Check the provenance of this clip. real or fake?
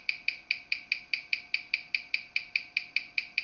real